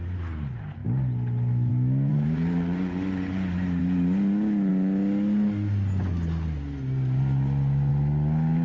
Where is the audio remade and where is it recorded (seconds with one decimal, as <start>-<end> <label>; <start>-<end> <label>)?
0.0-2.1 recorded; 2.1-3.8 remade; 3.8-8.6 recorded